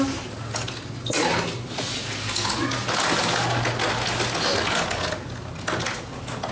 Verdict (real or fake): real